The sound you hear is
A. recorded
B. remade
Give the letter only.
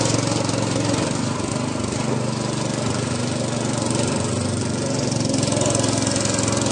A